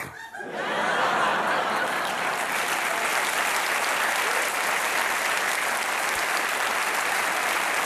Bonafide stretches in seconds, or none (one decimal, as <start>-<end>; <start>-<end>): 0.0-7.9